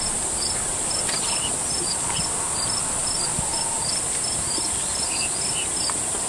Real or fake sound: real